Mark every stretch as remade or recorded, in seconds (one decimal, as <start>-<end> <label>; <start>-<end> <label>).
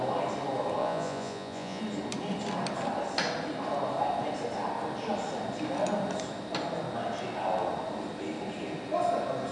0.0-0.8 recorded; 0.8-1.8 remade; 1.8-9.5 recorded